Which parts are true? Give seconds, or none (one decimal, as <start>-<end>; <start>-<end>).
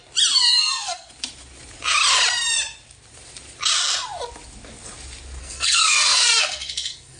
0.0-0.5; 1.1-5.4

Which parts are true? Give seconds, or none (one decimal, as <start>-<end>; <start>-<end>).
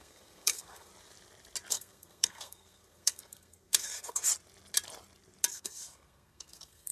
0.9-1.7; 4.3-5.5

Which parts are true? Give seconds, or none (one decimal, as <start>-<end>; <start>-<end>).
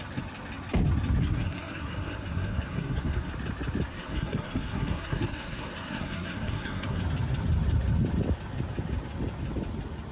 0.0-1.2; 3.3-3.9; 7.0-10.1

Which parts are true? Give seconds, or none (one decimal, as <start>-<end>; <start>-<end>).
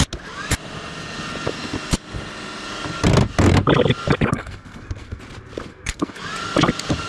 0.0-4.3; 5.2-5.7; 6.2-7.1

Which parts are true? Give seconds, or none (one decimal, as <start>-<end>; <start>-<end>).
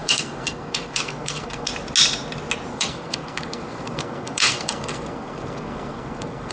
1.7-2.7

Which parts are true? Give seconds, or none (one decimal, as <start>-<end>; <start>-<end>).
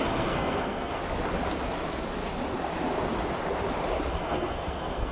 1.0-4.1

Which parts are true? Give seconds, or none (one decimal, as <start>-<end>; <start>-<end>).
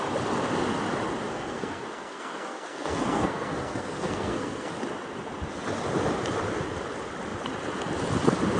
0.0-1.3; 4.7-8.6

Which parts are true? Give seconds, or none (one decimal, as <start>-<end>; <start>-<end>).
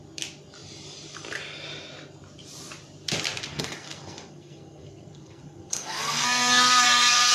0.0-3.5